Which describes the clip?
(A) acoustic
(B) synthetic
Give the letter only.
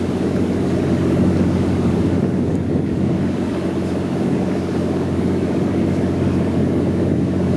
B